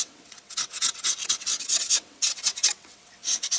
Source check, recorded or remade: remade